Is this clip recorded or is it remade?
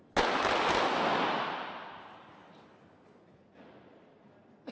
recorded